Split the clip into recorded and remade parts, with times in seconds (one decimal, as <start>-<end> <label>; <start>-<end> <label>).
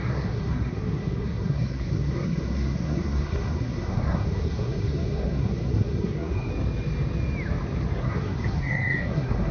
0.0-6.5 remade; 6.5-8.0 recorded; 8.0-9.5 remade